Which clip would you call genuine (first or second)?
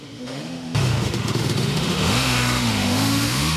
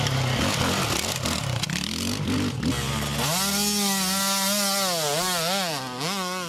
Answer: second